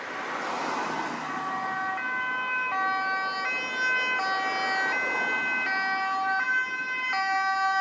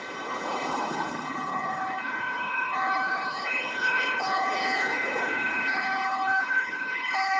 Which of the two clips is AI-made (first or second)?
second